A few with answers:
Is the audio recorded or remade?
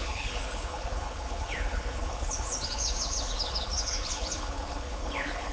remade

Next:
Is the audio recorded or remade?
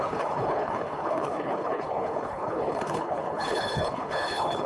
remade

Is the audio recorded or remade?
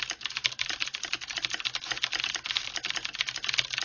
recorded